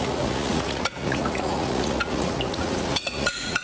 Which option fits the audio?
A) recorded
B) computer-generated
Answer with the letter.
B